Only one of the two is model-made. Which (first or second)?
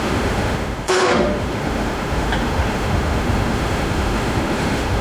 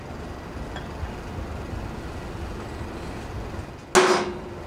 first